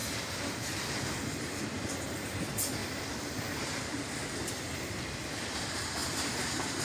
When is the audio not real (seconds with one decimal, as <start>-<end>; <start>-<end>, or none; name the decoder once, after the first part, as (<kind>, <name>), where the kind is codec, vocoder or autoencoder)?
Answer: 0.0-1.6 (vocoder, BigVGAN v2); 2.8-4.5; 6.0-6.8